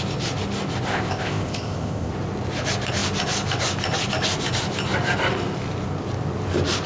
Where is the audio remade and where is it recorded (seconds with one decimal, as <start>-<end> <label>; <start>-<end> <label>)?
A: 0.0-0.9 recorded; 0.9-2.1 remade; 2.1-6.9 recorded